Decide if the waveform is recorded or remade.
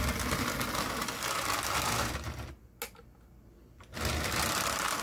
recorded